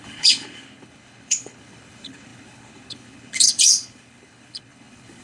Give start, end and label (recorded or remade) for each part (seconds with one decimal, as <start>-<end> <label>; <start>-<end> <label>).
0.0-5.2 remade